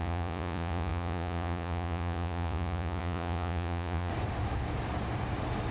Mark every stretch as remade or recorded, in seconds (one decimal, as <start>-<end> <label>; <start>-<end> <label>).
0.0-4.1 remade; 4.1-5.7 recorded